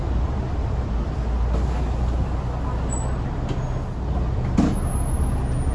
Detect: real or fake real